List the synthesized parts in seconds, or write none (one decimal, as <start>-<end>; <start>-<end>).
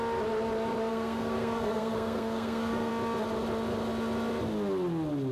0.9-2.9